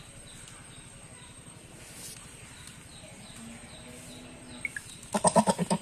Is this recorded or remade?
recorded